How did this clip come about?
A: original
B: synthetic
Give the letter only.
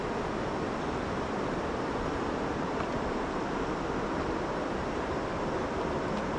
B